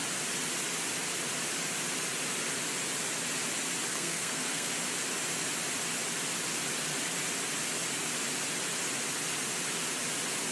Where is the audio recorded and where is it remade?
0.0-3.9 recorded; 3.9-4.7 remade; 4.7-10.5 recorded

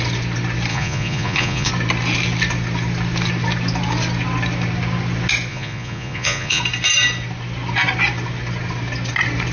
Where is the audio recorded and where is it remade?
0.0-0.7 recorded; 0.7-1.7 remade; 1.7-5.5 recorded; 5.5-6.6 remade; 6.6-9.5 recorded

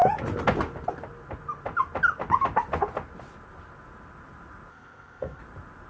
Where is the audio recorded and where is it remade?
0.0-4.7 recorded; 4.7-5.4 remade; 5.4-5.9 recorded

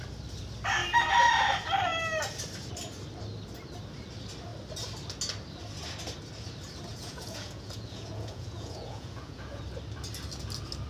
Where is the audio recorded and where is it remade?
0.0-6.9 recorded; 6.9-9.6 remade; 9.6-10.9 recorded

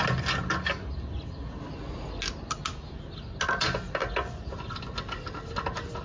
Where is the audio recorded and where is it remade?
0.0-6.0 recorded

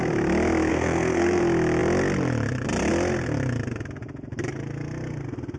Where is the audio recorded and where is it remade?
0.0-0.7 recorded; 0.7-1.4 remade; 1.4-5.6 recorded

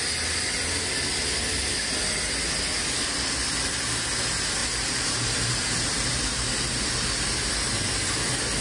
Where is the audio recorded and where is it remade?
0.0-4.6 recorded; 4.6-6.9 remade; 6.9-8.6 recorded

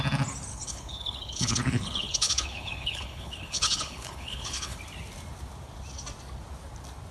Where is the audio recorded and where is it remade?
0.0-0.5 recorded; 0.5-4.8 remade; 4.8-7.1 recorded